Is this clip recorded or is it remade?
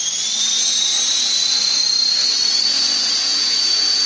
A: recorded